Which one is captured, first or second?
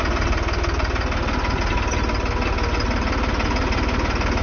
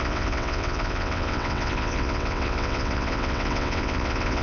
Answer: first